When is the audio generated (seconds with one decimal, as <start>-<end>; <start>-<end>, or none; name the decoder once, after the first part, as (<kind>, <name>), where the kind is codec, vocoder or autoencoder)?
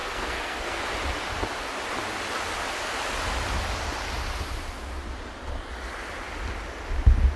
0.0-0.8 (codec, SNAC)